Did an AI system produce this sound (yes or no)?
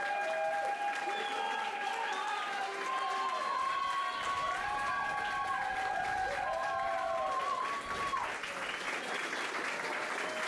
no